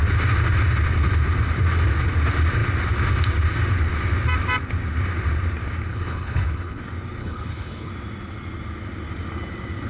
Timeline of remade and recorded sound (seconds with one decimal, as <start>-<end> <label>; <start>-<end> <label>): 0.0-5.9 recorded; 5.9-6.8 remade; 6.8-7.2 recorded; 7.2-7.9 remade; 7.9-9.9 recorded